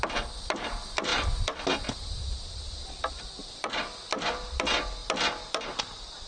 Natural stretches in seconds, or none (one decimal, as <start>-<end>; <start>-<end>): 0.0-3.4; 3.9-6.3